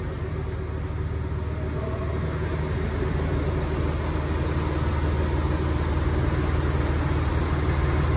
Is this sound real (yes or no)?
yes